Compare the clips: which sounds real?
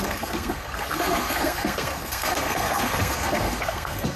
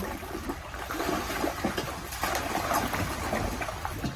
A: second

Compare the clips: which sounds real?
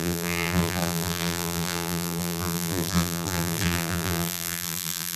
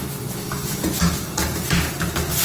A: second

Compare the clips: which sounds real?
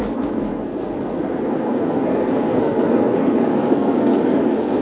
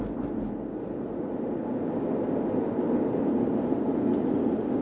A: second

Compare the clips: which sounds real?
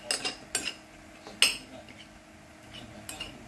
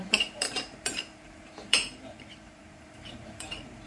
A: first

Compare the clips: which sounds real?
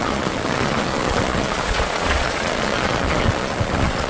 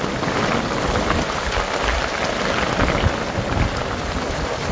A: second